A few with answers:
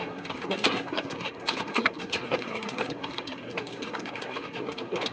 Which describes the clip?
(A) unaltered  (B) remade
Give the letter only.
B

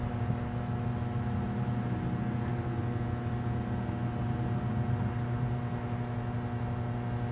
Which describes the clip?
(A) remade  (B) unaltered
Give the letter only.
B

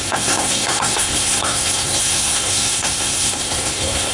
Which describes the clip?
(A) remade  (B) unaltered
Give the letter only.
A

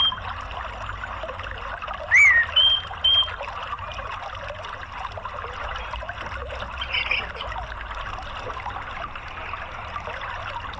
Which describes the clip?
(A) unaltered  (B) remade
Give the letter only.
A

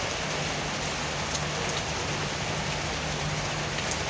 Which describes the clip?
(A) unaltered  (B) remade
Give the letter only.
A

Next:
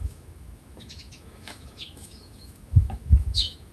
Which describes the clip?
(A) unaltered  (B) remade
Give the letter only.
B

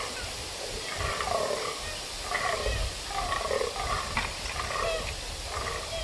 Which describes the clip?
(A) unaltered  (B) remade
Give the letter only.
A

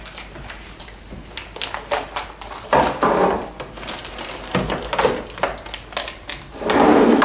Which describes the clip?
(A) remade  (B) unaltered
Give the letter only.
B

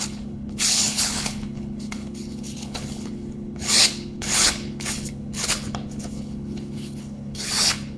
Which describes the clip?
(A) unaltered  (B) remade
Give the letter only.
B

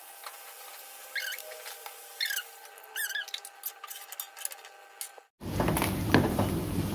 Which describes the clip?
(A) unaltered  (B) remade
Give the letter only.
A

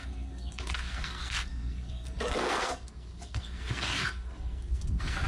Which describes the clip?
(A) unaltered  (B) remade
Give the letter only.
B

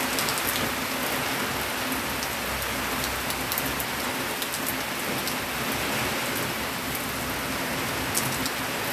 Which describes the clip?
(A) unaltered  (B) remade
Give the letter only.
A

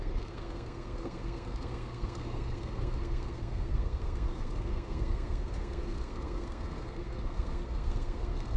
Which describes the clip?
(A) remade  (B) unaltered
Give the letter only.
A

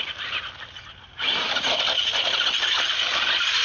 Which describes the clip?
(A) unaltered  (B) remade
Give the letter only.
A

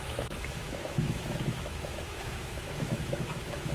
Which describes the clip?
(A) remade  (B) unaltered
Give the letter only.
A